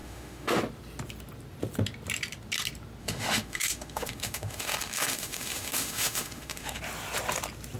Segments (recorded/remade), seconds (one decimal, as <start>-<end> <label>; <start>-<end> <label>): 0.0-0.6 remade; 0.6-3.0 recorded; 3.0-6.8 remade; 6.8-7.8 recorded